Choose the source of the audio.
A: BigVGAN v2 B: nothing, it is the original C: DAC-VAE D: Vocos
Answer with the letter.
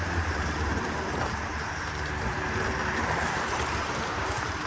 A